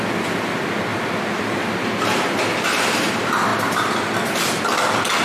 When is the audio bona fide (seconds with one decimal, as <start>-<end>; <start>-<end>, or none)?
0.0-3.5; 4.6-5.2